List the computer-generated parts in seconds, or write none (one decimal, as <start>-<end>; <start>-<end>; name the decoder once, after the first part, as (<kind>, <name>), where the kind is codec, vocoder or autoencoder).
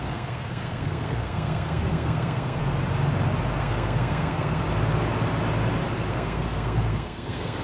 0.0-2.6 (codec, SNAC); 3.6-4.6; 6.1-7.6